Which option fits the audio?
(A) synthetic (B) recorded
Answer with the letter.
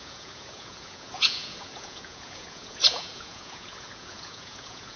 A